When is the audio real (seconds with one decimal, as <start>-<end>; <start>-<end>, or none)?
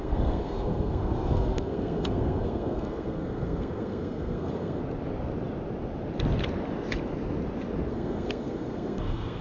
4.8-7.9